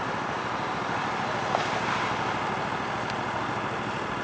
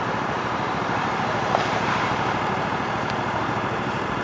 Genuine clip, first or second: first